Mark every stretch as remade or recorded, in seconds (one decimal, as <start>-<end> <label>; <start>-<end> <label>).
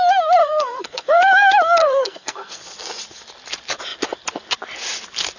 0.0-0.4 recorded; 0.4-1.2 remade; 1.2-1.8 recorded; 1.8-2.6 remade; 2.6-5.4 recorded